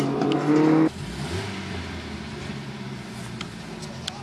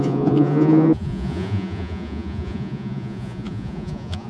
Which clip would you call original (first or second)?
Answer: first